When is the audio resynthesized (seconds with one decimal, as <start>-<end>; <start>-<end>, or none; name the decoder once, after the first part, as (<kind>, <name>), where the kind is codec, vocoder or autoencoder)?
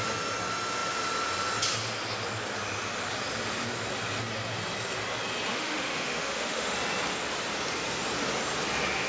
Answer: 5.5-6.7 (autoencoder, DAC-VAE)